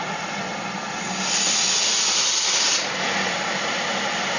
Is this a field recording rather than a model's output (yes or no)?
yes